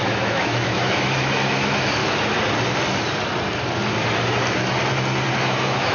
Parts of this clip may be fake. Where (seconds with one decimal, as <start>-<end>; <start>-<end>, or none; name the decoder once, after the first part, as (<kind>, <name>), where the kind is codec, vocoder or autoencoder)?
0.0-2.0 (autoencoder, DAC-VAE); 5.5-5.9